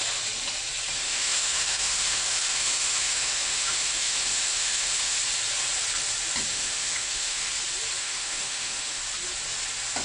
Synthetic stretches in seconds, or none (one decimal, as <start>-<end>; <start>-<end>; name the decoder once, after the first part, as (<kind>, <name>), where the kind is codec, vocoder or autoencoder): 1.0-5.2 (autoencoder, DAC-VAE); 6.5-7.5; 8.0-9.0